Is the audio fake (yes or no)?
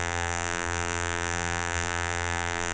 yes